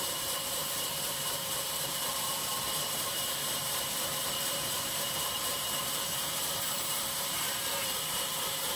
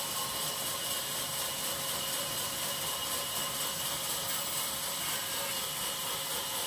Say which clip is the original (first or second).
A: second